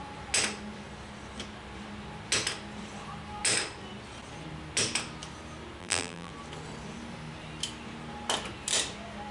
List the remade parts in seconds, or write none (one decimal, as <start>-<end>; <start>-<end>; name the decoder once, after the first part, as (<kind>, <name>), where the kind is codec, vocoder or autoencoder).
5.8-6.3 (vocoder, BigVGAN v2)